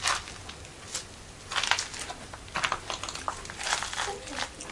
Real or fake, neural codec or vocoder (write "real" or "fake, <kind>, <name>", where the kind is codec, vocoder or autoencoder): real